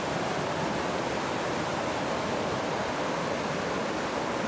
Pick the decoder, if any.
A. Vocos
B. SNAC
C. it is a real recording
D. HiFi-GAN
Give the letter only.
C